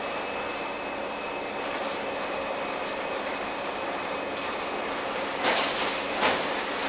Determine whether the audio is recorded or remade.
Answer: recorded